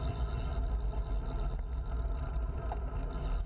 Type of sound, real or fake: real